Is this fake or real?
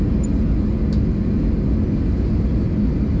real